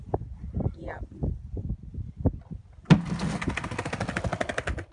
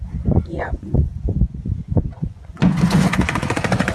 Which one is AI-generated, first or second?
second